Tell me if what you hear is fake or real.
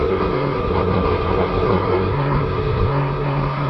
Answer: fake